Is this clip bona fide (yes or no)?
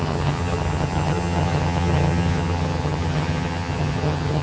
no